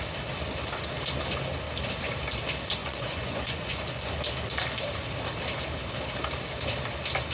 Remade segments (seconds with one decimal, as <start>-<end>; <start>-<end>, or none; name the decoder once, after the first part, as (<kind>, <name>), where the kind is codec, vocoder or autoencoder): 2.8-4.1 (vocoder, Vocos)